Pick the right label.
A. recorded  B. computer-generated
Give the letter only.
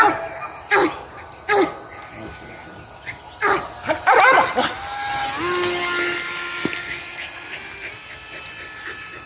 A